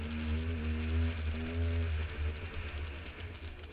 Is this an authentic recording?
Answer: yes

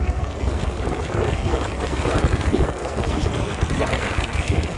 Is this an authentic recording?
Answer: no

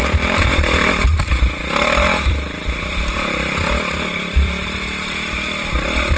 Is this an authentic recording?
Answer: no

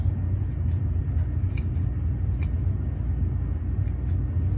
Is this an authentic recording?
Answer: yes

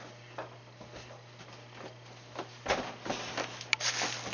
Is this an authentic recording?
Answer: yes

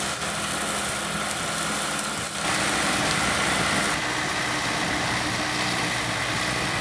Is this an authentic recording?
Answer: yes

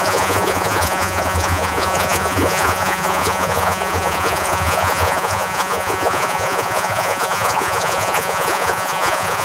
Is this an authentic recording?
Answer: no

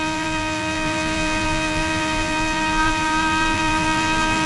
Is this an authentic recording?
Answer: no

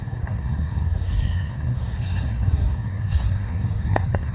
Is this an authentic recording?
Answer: no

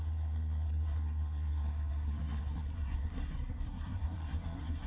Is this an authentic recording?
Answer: no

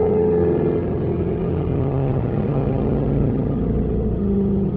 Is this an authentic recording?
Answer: no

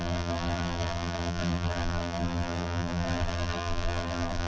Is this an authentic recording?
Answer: no